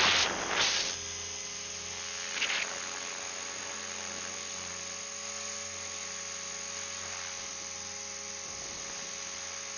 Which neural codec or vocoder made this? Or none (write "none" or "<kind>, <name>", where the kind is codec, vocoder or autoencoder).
none